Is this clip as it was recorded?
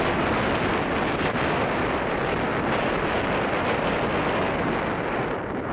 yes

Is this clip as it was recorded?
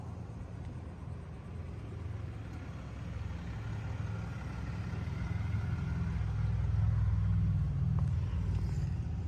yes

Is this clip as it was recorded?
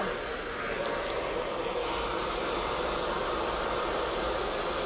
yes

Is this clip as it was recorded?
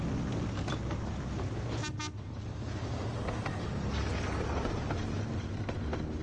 yes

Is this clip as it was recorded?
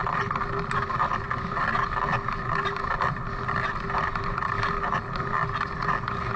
yes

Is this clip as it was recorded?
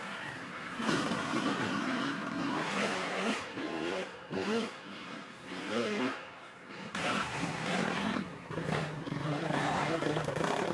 no